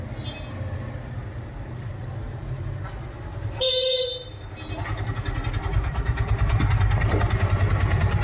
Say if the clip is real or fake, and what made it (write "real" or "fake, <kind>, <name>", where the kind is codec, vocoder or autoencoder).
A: real